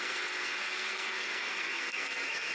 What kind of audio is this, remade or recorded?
remade